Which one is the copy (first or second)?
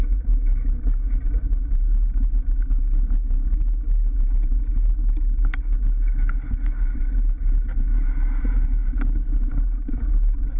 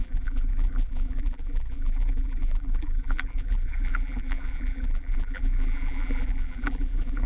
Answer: second